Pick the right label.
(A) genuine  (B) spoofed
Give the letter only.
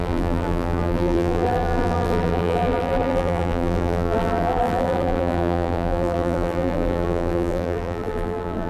B